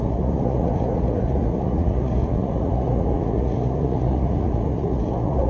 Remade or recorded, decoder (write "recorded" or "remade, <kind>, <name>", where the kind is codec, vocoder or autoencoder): remade, vocoder, Vocos